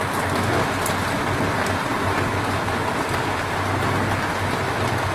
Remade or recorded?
recorded